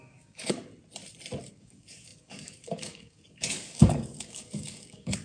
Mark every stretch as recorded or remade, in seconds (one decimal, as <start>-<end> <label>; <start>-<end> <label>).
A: 0.0-0.7 remade; 0.7-1.5 recorded; 1.5-5.2 remade